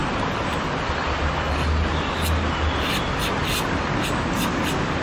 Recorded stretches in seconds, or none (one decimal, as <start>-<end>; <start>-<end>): 0.0-3.4; 3.9-5.0